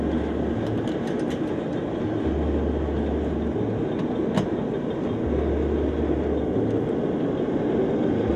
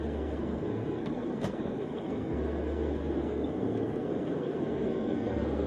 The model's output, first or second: second